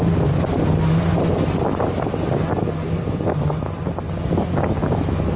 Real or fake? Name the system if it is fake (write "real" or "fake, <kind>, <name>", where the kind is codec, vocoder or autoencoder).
real